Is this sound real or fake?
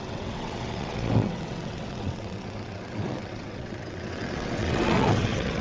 fake